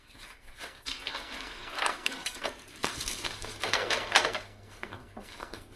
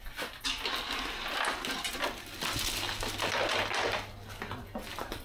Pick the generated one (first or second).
first